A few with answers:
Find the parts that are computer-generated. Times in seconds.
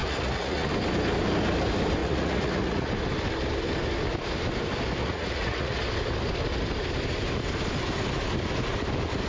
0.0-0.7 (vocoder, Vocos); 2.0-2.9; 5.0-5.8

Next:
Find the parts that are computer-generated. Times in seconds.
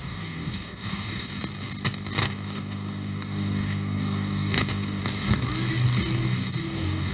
0.0-1.4 (codec, DAC); 2.2-5.0; 6.2-7.1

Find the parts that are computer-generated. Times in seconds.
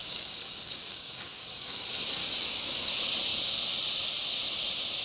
0.0-1.8 (codec, DAC); 2.2-2.9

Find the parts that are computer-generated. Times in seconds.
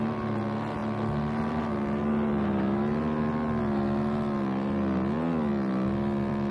0.8-3.6 (vocoder, BigVGAN v2); 5.5-6.5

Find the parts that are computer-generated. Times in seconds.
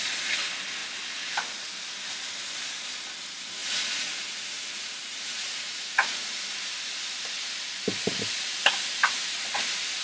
3.6-6.7 (vocoder, Vocos)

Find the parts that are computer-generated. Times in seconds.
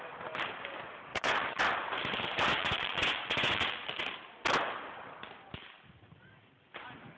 1.1-1.6 (vocoder, Vocos); 2.5-4.0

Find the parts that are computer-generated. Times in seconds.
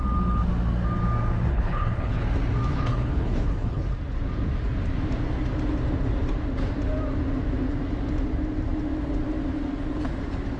1.5-2.2 (codec, HILCodec); 2.7-3.9